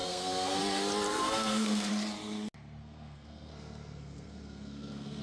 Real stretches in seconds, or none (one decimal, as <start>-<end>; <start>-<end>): 0.6-1.1; 1.9-2.8